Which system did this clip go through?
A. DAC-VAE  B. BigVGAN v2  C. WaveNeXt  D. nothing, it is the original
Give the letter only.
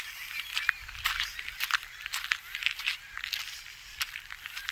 D